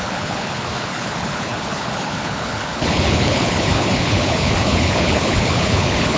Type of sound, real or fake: fake